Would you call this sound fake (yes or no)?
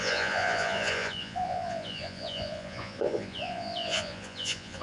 yes